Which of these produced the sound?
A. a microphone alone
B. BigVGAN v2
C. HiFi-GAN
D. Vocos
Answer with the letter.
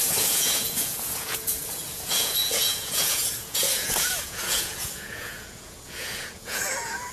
D